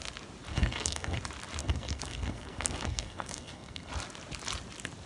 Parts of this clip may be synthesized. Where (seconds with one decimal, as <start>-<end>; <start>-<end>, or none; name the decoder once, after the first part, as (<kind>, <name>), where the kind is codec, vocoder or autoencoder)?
0.5-1.2 (codec, SNAC); 1.6-3.9